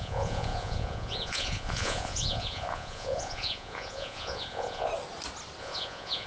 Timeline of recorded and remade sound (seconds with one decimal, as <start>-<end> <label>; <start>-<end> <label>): 0.0-4.9 remade; 4.9-5.6 recorded; 5.6-6.3 remade